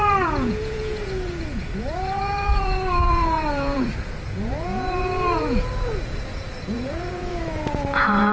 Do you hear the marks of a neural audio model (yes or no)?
yes